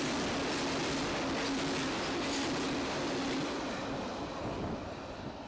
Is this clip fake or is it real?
real